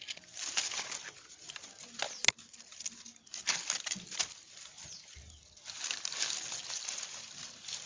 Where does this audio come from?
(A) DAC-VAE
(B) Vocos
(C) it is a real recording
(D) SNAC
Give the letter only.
C